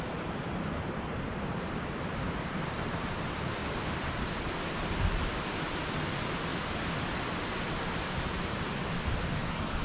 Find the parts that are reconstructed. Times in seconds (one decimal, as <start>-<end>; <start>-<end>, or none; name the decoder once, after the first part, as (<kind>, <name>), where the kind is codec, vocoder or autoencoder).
none